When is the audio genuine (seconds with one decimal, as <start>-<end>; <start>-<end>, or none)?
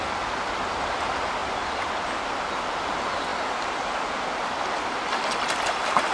0.0-3.3; 3.8-6.1